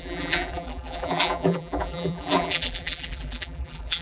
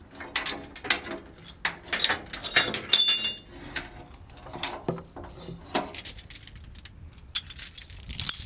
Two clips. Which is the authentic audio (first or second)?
second